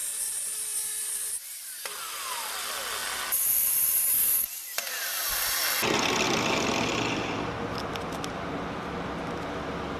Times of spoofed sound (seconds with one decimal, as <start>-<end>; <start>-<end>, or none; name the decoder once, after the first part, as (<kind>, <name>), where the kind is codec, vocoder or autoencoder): none